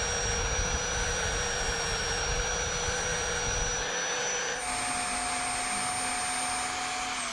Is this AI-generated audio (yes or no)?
no